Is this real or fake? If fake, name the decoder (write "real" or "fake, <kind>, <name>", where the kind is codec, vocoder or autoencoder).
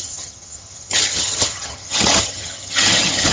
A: fake, vocoder, HiFi-GAN